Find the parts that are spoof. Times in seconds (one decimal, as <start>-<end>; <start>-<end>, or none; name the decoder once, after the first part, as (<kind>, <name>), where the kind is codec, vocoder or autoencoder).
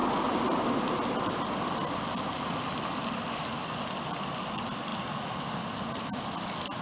none